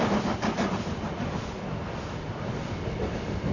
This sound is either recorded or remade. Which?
recorded